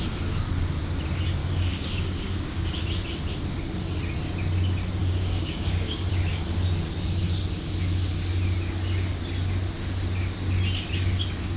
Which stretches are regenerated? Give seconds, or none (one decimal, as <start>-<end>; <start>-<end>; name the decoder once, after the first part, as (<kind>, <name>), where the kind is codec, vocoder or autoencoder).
1.4-2.7 (codec, DAC); 5.0-6.1